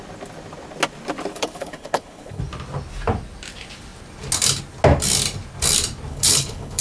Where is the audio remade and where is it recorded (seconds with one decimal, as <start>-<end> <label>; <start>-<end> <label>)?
0.0-1.3 recorded; 1.3-2.4 remade; 2.4-6.1 recorded; 6.1-6.8 remade